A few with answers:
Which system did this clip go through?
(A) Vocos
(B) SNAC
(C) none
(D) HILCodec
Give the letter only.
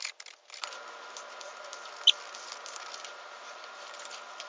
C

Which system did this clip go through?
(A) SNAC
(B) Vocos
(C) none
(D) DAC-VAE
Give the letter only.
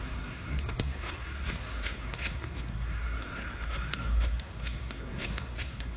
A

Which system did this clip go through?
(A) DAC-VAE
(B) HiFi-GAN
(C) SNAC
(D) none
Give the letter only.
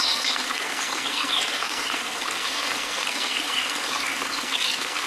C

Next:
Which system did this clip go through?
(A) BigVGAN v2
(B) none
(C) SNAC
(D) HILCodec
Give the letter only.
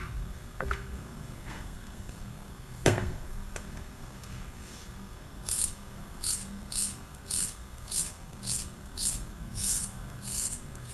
C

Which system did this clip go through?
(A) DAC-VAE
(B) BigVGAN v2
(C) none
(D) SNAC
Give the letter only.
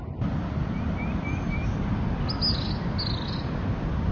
C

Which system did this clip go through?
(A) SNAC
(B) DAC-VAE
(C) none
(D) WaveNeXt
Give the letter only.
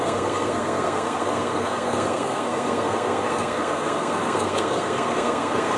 A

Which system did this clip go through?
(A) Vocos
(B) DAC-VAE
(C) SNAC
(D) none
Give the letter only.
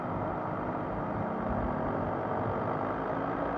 D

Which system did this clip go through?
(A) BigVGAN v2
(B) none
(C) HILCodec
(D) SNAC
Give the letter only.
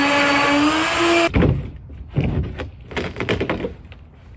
B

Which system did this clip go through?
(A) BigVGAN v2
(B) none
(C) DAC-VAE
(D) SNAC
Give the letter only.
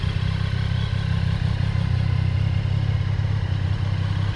B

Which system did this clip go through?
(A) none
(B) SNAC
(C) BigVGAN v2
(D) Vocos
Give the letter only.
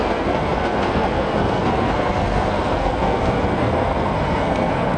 B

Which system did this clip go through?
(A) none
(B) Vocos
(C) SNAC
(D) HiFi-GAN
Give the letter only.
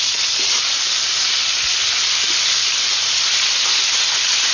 A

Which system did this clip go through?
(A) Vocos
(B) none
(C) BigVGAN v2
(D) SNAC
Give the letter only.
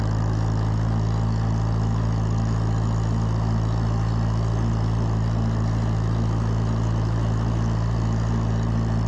B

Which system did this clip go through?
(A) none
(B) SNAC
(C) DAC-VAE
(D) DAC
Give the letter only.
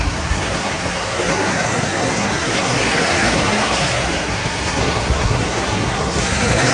B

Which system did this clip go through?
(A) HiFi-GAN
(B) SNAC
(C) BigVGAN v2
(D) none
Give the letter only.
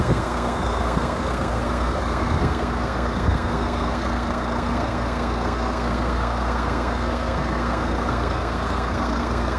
B